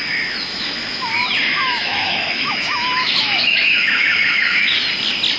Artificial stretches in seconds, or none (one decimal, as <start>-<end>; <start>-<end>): 0.5-1.1; 1.5-4.7